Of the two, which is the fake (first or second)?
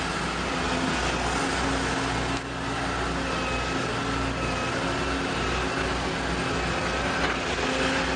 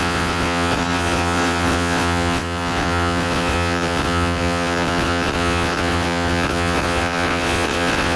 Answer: second